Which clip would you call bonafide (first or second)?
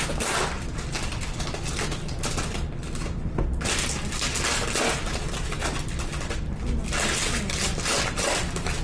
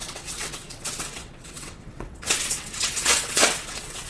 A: first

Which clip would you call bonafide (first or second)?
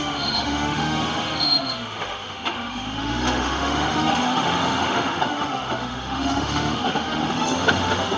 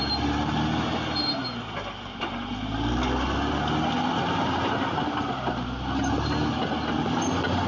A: second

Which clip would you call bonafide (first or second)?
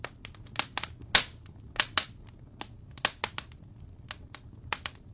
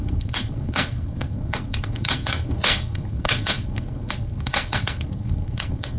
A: first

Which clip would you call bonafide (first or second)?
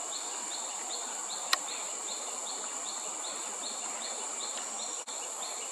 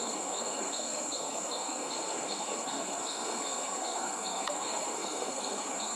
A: first